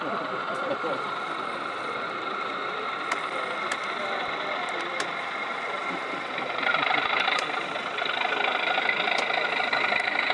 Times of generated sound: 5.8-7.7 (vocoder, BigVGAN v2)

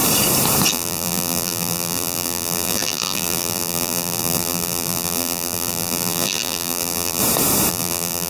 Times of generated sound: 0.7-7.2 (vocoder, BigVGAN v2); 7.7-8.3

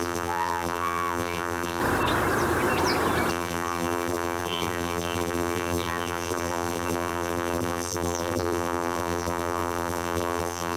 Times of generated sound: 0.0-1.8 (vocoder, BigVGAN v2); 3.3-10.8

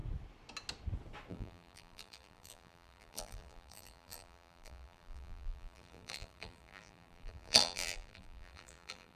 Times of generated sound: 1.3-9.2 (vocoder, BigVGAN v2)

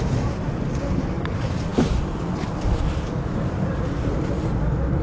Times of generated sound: none

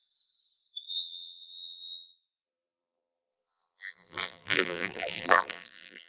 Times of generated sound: 0.9-6.1 (vocoder, BigVGAN v2)